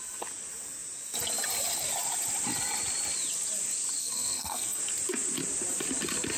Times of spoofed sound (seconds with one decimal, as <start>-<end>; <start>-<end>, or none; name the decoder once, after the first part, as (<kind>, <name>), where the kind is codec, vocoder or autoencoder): 4.0-4.8 (codec, SNAC)